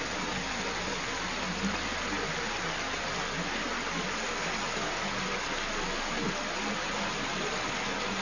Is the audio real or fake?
real